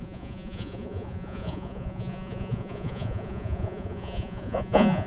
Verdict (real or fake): fake